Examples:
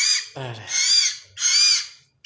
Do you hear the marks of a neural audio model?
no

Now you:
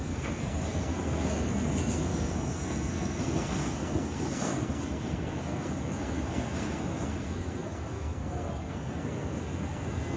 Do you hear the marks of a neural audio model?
yes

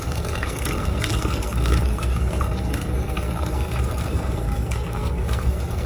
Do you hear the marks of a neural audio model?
yes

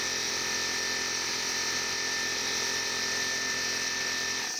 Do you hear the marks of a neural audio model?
no